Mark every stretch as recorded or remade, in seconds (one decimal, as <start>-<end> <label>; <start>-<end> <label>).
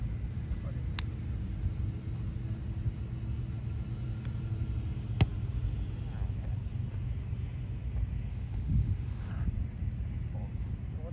0.0-8.3 recorded; 8.3-9.3 remade; 9.3-11.1 recorded